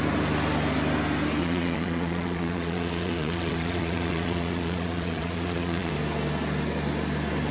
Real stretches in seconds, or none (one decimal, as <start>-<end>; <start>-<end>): 0.0-1.4; 5.9-7.5